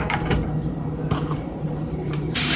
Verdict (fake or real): fake